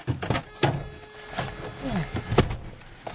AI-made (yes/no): no